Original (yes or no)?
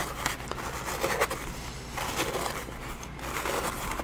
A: yes